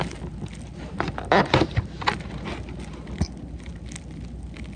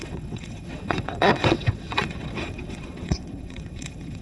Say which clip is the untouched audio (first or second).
first